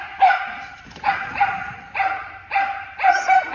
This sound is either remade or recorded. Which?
remade